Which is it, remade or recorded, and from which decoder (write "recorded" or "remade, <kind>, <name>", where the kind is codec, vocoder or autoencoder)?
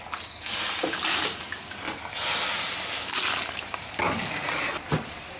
recorded